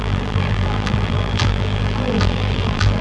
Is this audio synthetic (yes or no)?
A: yes